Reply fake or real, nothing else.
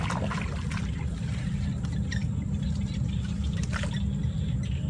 real